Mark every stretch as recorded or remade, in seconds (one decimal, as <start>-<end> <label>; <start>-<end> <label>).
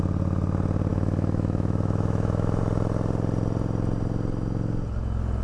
0.0-0.9 recorded; 0.9-2.6 remade; 2.6-5.4 recorded